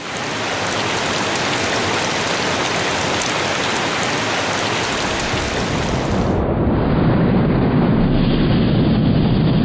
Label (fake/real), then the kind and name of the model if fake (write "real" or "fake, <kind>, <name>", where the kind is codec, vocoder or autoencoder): real